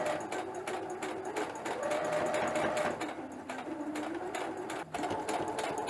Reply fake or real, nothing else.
real